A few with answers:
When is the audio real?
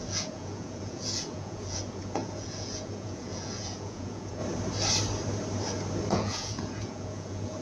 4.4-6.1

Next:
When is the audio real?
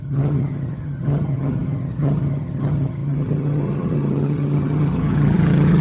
none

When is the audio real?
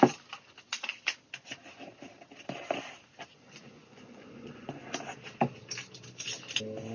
0.0-3.3; 4.8-6.9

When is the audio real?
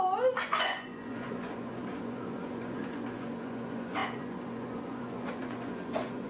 none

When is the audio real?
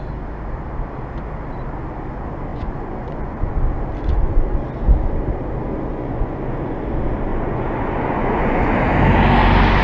0.0-2.5; 3.5-5.9; 6.8-7.3; 8.7-9.8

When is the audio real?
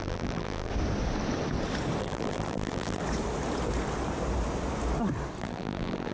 0.7-2.0; 3.0-5.4